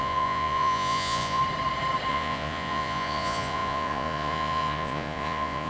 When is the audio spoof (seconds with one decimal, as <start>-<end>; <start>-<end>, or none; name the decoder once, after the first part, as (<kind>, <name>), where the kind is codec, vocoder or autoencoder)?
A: 0.0-1.4 (vocoder, Vocos); 2.1-5.7